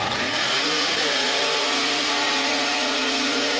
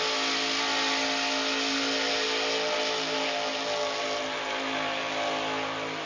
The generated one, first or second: first